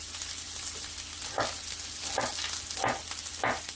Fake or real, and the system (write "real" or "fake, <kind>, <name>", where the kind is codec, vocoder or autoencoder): real